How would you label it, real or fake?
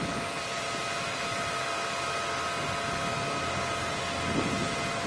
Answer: real